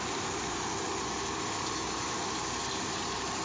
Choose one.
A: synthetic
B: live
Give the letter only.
B